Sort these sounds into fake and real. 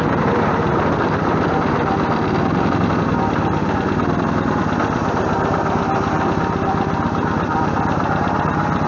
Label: fake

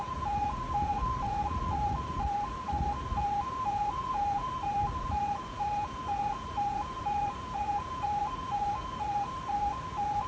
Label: fake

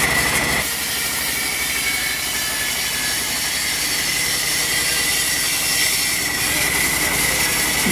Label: fake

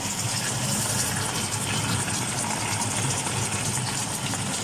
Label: real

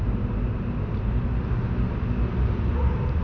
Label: real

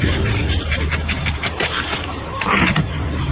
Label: fake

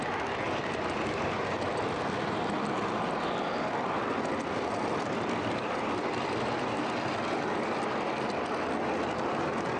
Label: real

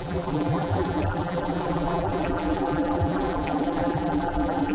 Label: fake